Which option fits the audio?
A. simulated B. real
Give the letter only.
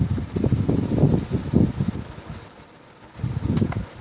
B